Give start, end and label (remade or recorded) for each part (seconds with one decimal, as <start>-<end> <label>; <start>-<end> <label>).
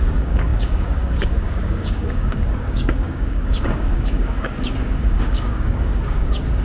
0.0-6.6 remade